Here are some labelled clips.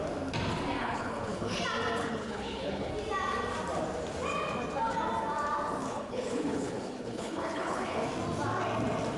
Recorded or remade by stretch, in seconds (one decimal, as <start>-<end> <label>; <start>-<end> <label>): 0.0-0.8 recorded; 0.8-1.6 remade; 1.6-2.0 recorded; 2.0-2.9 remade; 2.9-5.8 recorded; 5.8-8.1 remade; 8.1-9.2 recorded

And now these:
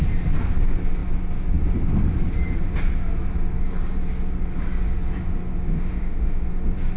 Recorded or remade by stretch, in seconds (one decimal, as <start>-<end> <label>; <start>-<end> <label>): 0.0-5.7 recorded; 5.7-6.5 remade; 6.5-7.0 recorded

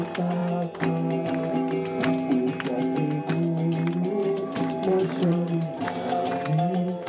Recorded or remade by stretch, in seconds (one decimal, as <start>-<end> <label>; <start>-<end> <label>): 0.0-4.2 recorded; 4.2-7.1 remade

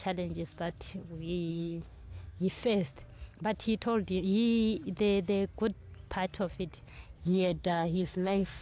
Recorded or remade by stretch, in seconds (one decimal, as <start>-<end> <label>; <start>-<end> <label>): 0.0-1.5 recorded; 1.5-2.4 remade; 2.4-7.2 recorded; 7.2-8.6 remade

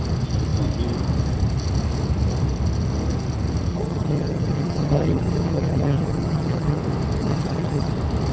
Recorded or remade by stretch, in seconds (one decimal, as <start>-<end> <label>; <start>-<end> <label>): 0.0-3.7 recorded; 3.7-6.8 remade; 6.8-7.2 recorded; 7.2-7.9 remade; 7.9-8.3 recorded

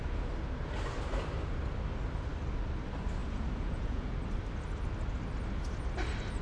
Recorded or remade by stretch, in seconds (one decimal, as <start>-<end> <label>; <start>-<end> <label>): 0.0-3.2 recorded; 3.2-4.1 remade; 4.1-6.4 recorded